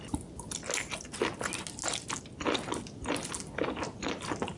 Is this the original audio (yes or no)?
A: yes